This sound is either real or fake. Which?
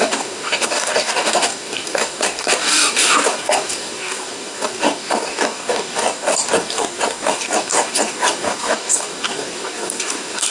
fake